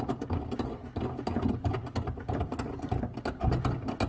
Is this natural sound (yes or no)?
yes